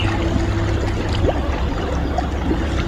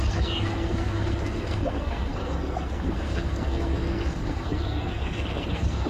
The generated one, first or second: second